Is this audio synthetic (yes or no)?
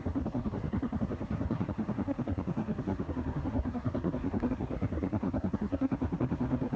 yes